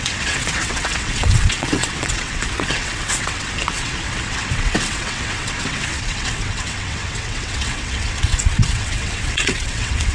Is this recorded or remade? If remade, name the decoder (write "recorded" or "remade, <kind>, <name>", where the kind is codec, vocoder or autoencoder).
remade, vocoder, WaveNeXt